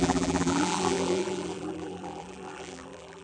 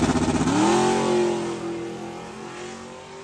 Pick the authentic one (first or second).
second